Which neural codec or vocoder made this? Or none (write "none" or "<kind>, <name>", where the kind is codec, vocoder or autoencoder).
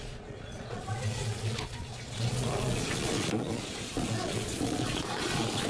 vocoder, Vocos